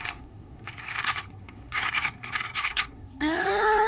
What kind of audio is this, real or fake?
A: fake